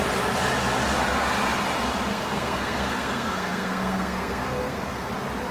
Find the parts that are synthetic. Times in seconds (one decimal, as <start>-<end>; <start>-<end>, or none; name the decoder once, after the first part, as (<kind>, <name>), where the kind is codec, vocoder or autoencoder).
2.1-5.1 (codec, SNAC)

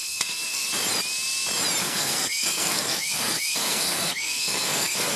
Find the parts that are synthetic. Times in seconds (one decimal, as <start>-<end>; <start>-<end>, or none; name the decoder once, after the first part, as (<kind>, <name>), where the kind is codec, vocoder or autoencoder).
0.0-0.7 (codec, SNAC); 1.8-5.2

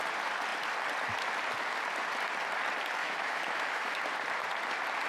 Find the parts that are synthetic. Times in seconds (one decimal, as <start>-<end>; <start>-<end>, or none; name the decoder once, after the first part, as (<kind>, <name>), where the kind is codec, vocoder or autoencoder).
3.0-4.0 (autoencoder, DAC-VAE)